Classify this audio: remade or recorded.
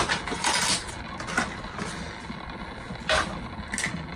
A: recorded